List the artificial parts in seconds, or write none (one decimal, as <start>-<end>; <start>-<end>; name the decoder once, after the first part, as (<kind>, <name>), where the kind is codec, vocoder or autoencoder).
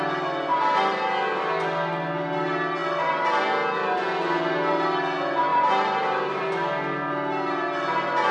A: 5.5-6.4 (vocoder, BigVGAN v2)